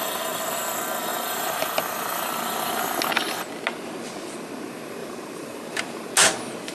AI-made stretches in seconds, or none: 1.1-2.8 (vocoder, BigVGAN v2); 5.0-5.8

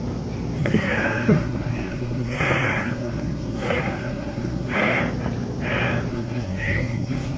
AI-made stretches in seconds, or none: 0.6-5.0 (codec, SNAC); 6.1-7.4

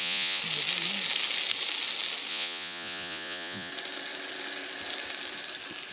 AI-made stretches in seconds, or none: 0.0-0.4 (vocoder, Vocos); 2.3-3.7

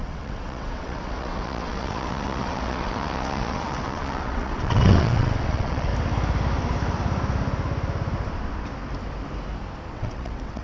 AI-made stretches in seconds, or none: 0.0-5.9 (vocoder, WaveNeXt); 9.9-10.6

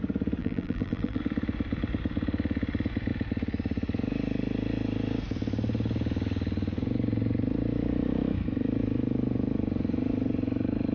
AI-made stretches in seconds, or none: 0.4-1.2 (vocoder, BigVGAN v2)

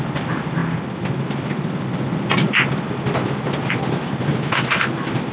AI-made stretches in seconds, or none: none

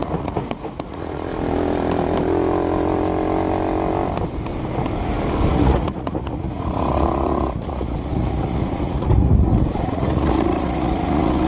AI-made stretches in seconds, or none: 0.0-1.3 (vocoder, Vocos); 5.5-11.5